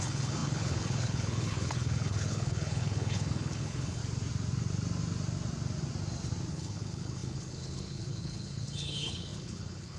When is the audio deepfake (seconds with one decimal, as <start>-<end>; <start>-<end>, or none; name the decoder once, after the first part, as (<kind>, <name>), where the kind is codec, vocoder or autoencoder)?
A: 0.0-4.0 (codec, HILCodec); 6.5-10.0